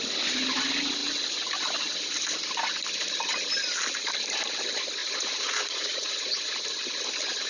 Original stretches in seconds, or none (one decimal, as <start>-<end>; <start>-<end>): 0.0-5.0; 6.5-7.5